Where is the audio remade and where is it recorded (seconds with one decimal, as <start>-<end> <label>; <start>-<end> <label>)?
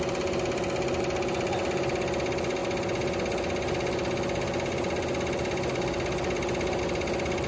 0.0-7.5 recorded